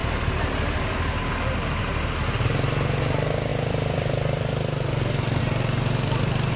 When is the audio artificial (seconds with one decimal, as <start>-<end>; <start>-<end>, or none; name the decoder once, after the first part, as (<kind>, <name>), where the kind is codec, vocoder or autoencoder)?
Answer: 0.0-1.2 (vocoder, BigVGAN v2); 3.5-5.4